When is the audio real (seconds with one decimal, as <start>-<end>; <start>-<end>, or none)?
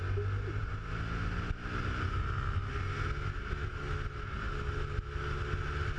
0.0-6.0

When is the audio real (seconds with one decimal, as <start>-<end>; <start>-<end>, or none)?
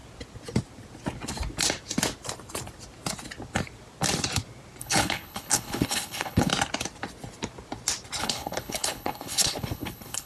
0.0-4.8; 6.5-8.2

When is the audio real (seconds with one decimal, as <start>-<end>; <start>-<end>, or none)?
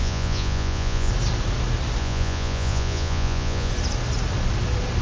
1.1-2.0; 3.7-5.0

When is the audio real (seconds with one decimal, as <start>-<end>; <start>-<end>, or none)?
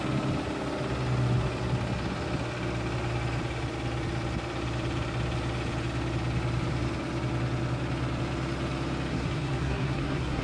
0.0-9.1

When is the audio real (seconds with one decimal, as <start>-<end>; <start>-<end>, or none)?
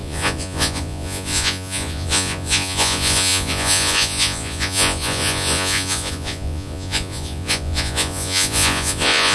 none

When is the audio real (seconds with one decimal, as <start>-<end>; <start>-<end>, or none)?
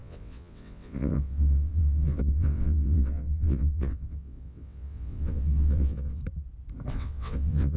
6.2-6.9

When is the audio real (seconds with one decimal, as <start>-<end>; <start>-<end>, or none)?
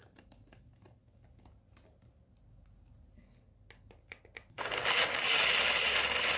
0.0-6.4